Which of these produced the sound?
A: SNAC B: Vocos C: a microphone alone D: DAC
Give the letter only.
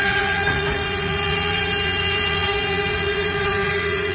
B